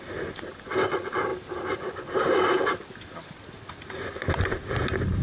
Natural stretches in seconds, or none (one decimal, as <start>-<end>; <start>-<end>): 0.0-5.2